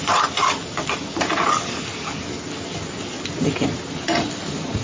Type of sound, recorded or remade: recorded